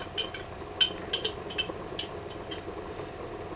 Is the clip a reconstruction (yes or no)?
no